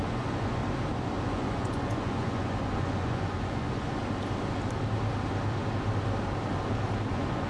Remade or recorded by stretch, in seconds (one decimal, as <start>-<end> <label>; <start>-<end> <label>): 0.0-0.6 remade; 0.6-1.2 recorded; 1.2-4.0 remade; 4.0-7.1 recorded; 7.1-7.5 remade